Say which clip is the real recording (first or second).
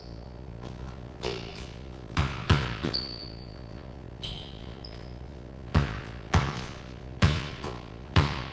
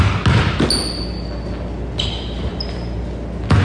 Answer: second